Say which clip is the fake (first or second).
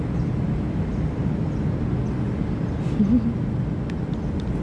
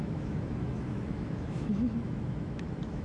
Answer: second